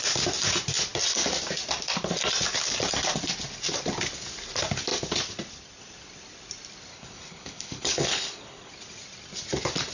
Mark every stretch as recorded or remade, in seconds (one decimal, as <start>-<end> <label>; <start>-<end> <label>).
0.0-6.9 recorded; 6.9-8.7 remade; 8.7-9.9 recorded